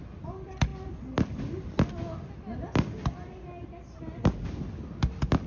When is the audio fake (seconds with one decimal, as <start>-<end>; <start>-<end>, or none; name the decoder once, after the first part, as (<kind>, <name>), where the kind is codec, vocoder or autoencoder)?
none